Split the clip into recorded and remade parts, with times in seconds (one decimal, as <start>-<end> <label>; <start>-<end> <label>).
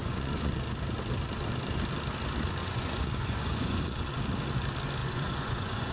0.0-0.6 remade; 0.6-2.6 recorded; 2.6-4.2 remade; 4.2-5.0 recorded; 5.0-5.9 remade